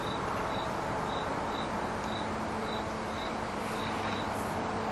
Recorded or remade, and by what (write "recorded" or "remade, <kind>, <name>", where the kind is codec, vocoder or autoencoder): recorded